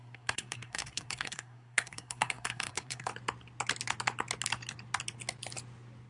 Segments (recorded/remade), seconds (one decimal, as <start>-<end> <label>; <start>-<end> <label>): 0.0-3.1 remade; 3.1-6.1 recorded